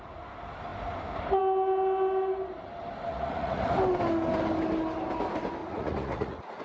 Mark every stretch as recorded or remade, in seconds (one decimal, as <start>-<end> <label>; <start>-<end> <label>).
0.0-3.1 recorded; 3.1-3.7 remade; 3.7-5.6 recorded; 5.6-6.6 remade